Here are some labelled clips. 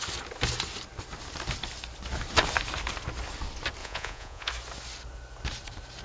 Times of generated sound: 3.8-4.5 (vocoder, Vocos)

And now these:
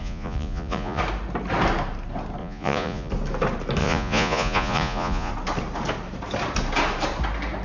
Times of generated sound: 0.0-1.0 (vocoder, Vocos); 2.4-3.1; 3.8-5.3